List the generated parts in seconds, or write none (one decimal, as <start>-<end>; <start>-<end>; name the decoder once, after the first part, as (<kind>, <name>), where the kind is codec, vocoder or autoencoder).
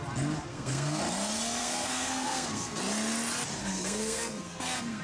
0.5-1.0 (codec, SNAC); 1.6-2.8; 3.6-5.0